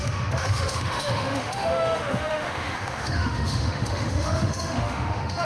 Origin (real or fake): fake